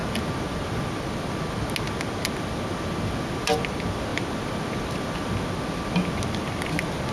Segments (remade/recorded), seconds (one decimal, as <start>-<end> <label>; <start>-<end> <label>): 0.0-7.1 recorded